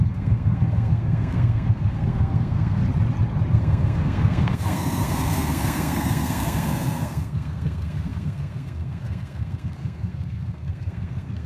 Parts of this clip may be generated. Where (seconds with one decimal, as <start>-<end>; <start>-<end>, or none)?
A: 0.0-2.8; 3.5-11.5